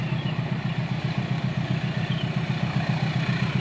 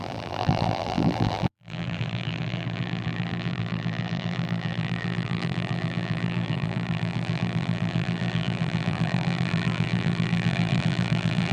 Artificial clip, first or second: second